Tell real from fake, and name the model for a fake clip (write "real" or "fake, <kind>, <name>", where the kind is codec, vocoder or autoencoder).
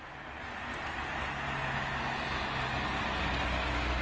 real